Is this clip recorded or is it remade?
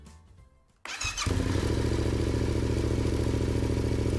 recorded